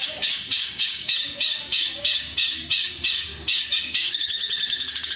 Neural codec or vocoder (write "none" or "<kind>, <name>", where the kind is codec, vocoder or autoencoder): codec, DAC